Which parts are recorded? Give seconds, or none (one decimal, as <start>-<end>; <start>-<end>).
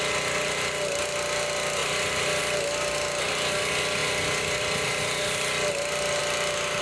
0.0-6.8